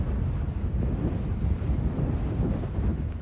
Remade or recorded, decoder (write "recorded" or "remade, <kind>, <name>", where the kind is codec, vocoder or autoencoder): recorded